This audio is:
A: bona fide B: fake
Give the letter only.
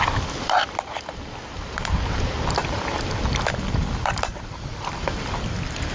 B